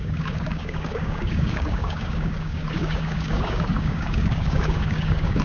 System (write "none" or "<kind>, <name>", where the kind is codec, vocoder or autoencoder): codec, DAC